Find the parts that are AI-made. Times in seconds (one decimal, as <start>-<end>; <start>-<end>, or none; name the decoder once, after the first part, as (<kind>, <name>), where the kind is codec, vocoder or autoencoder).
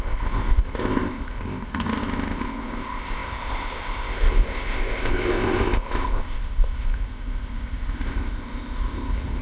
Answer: 0.0-9.4 (codec, ZipCodec)